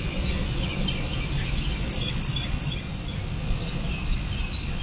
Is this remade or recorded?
recorded